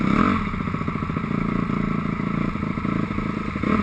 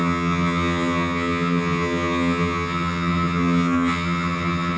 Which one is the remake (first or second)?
second